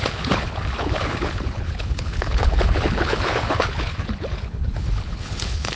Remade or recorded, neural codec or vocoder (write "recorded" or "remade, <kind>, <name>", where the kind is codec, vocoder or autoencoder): remade, codec, HILCodec